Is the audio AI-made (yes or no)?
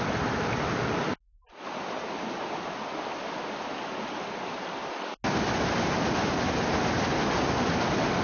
no